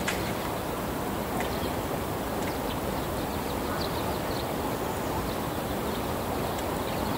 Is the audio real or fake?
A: real